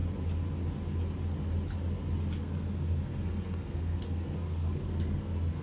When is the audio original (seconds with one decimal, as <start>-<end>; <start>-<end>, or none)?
0.0-2.4